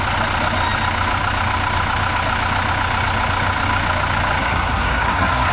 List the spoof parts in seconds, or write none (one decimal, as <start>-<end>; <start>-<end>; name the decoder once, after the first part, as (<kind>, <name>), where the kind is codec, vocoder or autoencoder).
4.4-5.5 (codec, SNAC)